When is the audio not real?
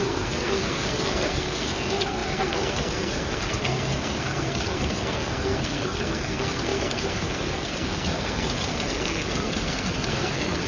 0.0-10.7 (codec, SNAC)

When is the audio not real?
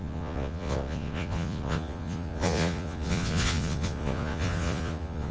0.0-5.3 (vocoder, Vocos)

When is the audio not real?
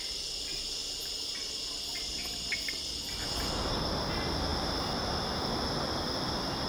none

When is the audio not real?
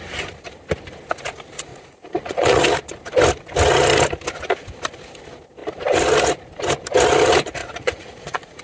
1.7-2.6 (vocoder, Vocos); 7.6-8.6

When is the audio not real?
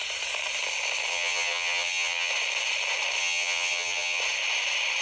1.1-2.3 (vocoder, HiFi-GAN); 3.2-4.2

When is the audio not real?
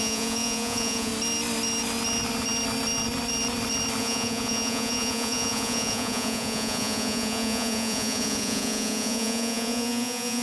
0.0-1.1 (vocoder, Vocos); 4.0-10.4